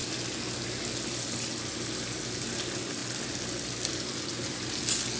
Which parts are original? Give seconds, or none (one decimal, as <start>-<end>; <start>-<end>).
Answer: 0.0-5.2